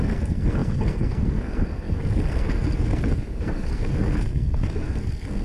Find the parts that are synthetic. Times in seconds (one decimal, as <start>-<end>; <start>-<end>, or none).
0.0-5.4